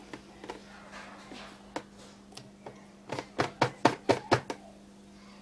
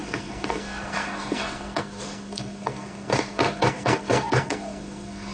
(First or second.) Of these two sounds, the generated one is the second